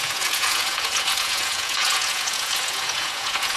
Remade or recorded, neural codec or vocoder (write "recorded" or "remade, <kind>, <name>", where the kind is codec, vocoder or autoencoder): remade, vocoder, Vocos